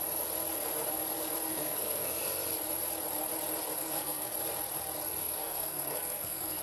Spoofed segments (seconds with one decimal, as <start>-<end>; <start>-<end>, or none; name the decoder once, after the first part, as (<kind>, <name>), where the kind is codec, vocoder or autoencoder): 1.5-2.2 (codec, SNAC); 3.8-4.3; 5.2-6.6